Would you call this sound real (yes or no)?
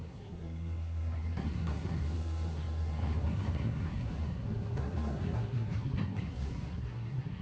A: no